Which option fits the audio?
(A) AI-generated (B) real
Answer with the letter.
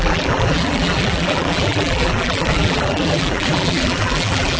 A